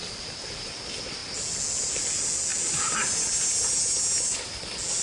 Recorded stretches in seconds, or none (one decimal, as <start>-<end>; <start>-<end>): 0.0-5.0